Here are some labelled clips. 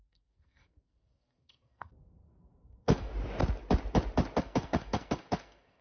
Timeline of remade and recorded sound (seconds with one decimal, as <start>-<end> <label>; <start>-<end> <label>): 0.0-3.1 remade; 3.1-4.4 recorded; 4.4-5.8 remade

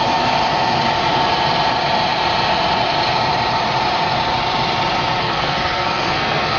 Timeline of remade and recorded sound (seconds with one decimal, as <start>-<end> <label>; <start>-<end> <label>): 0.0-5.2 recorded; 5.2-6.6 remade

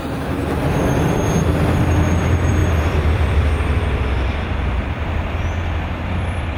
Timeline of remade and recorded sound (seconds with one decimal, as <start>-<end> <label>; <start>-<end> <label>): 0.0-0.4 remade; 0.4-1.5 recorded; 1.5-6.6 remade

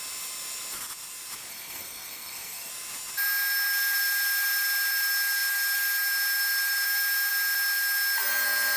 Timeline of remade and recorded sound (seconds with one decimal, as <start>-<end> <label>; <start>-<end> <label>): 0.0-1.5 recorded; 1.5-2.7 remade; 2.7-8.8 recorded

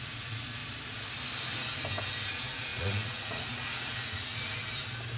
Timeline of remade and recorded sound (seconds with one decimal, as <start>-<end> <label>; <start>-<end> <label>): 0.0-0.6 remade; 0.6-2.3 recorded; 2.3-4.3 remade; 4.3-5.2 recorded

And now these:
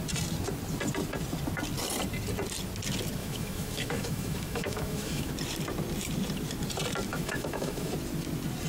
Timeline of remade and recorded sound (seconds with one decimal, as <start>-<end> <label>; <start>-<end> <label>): 0.0-3.2 recorded; 3.2-5.3 remade; 5.3-7.1 recorded; 7.1-7.9 remade; 7.9-8.7 recorded

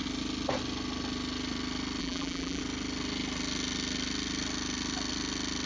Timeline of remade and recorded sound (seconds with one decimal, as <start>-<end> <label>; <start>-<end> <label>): 0.0-2.0 recorded; 2.0-2.6 remade; 2.6-5.7 recorded